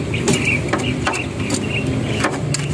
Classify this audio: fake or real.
real